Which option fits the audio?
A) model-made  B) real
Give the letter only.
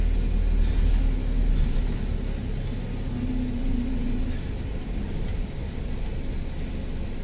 B